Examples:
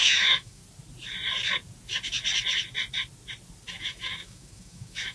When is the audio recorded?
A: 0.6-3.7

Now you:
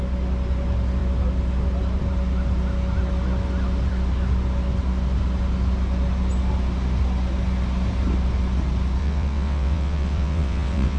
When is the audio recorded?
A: 0.0-9.0